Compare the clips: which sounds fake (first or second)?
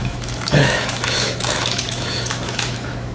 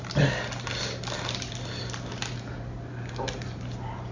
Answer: first